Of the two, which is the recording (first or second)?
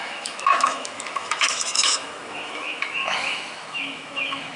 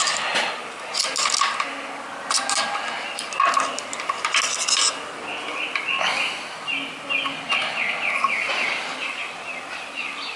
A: second